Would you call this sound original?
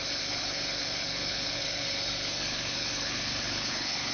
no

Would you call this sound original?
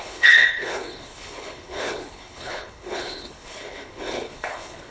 no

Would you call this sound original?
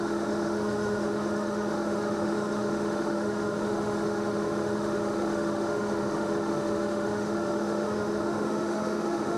no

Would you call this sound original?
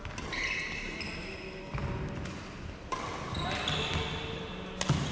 yes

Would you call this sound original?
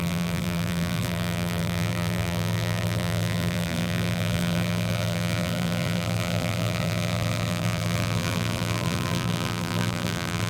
no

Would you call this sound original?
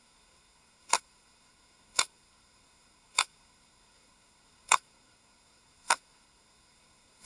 no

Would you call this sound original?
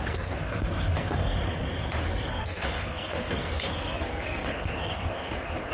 no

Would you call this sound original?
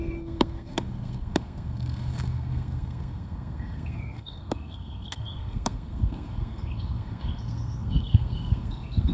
no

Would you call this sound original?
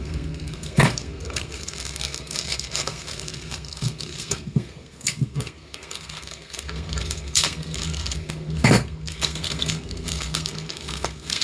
no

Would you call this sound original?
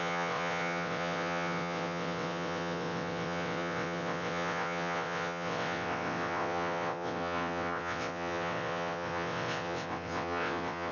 no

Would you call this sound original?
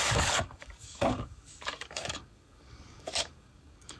no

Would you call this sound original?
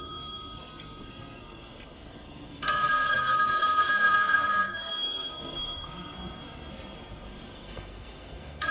no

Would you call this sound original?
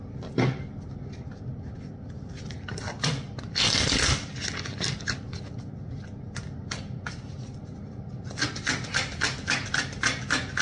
yes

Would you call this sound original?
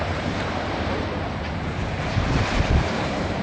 no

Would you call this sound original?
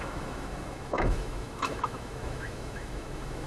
no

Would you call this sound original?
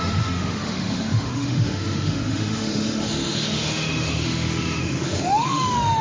no